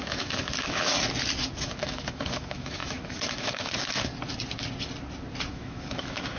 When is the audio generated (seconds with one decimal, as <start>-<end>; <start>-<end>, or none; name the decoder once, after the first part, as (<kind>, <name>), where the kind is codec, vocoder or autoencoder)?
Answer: 0.0-0.9 (autoencoder, DAC-VAE); 1.6-4.1; 5.5-6.4